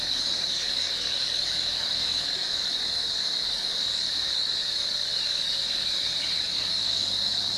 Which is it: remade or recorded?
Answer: remade